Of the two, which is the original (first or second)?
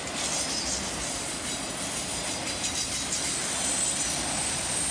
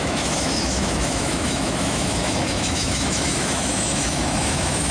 first